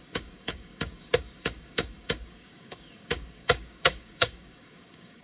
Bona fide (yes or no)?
no